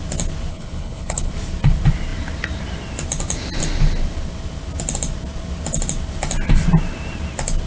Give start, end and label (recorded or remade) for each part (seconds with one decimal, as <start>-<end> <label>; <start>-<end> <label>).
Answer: 0.0-0.5 recorded; 0.5-1.3 remade; 1.3-7.7 recorded